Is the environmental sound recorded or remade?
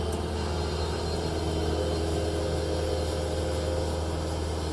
recorded